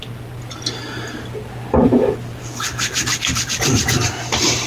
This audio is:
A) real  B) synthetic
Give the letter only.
A